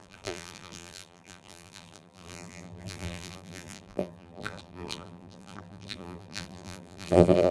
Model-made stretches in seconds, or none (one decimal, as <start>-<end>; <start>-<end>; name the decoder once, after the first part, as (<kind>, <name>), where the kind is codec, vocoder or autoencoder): 0.0-7.5 (vocoder, BigVGAN v2)